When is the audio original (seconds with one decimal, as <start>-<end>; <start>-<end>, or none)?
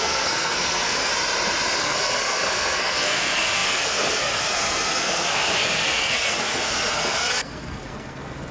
1.1-1.8